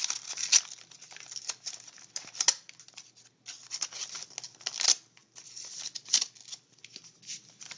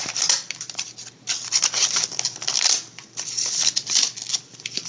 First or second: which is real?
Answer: first